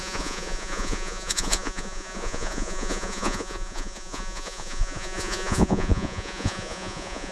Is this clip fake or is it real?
fake